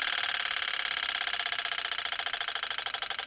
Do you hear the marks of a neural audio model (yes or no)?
no